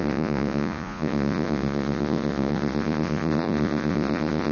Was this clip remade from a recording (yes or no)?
yes